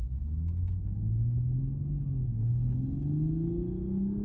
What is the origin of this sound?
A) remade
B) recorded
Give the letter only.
B